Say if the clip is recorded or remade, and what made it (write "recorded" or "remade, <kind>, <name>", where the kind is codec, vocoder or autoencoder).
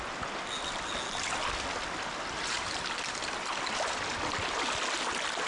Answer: recorded